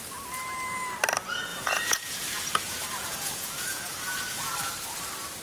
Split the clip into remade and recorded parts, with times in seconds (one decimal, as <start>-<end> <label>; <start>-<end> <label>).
0.0-1.5 recorded; 1.5-4.7 remade; 4.7-5.4 recorded